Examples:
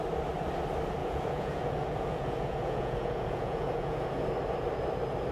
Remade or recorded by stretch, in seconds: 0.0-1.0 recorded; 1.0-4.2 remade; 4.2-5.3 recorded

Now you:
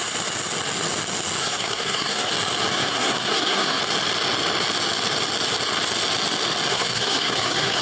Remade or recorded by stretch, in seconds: 0.0-1.4 recorded; 1.4-2.3 remade; 2.3-2.7 recorded; 2.7-3.8 remade; 3.8-6.7 recorded; 6.7-7.8 remade

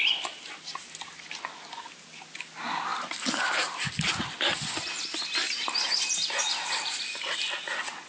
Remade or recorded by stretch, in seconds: 0.0-8.1 recorded

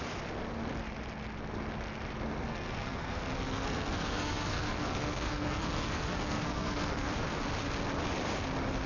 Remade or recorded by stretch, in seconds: 0.0-2.5 recorded; 2.5-7.1 remade; 7.1-8.9 recorded